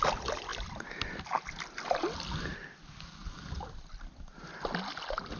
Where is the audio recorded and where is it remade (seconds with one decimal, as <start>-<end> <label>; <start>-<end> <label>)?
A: 0.0-5.4 recorded